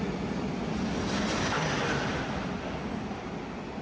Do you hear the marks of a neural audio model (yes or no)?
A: no